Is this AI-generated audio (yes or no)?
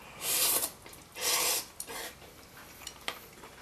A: yes